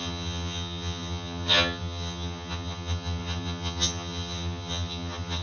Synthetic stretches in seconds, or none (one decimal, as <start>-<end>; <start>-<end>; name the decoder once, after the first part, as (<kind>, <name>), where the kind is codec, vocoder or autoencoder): 0.0-5.4 (vocoder, HiFi-GAN)

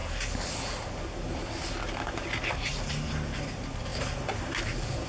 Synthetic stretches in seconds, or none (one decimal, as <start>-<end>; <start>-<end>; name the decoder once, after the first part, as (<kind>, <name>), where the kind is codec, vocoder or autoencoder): none

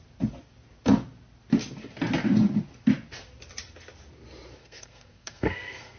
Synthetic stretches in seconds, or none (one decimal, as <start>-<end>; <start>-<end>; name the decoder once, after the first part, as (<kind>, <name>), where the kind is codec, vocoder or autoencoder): 4.6-6.0 (codec, SNAC)

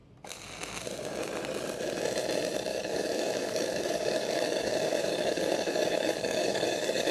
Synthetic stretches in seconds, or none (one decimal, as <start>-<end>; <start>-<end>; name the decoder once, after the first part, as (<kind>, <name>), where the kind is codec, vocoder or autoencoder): 2.7-7.1 (codec, DAC)

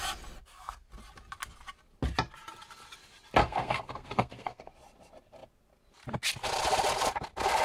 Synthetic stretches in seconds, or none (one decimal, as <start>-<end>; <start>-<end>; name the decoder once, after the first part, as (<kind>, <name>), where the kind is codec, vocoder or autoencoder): 0.4-0.9 (codec, SNAC); 3.4-4.7